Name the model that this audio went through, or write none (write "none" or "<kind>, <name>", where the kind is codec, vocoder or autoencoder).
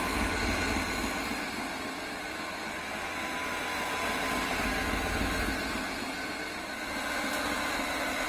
none